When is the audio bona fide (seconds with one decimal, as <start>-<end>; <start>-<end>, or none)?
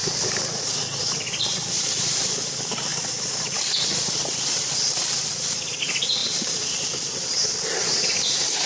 0.0-0.6; 2.9-3.4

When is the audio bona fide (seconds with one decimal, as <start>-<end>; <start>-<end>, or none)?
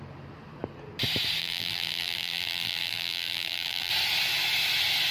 0.0-1.4; 3.9-5.1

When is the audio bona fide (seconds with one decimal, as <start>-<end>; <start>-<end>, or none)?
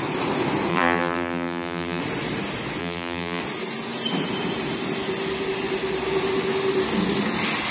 0.0-0.7; 2.0-2.8; 3.4-7.7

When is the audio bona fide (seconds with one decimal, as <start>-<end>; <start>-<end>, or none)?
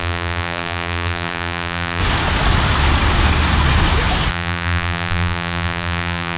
2.0-4.3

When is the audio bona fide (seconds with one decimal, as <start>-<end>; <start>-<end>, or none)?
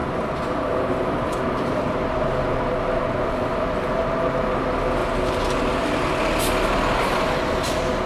3.0-5.0; 5.5-8.1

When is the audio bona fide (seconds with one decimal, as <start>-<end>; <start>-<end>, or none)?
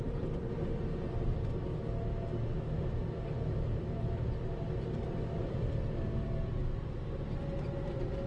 1.7-2.7; 6.6-7.6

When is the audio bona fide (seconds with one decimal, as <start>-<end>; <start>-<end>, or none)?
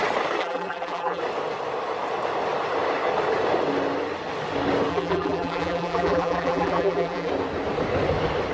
0.0-0.4; 1.2-4.9; 7.3-8.5